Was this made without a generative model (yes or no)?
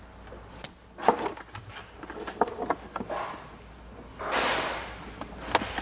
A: yes